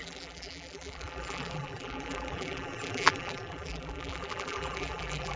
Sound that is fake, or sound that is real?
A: fake